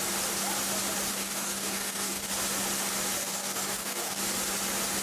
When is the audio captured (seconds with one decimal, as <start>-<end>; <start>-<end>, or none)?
0.0-1.1; 2.3-3.2; 4.2-5.0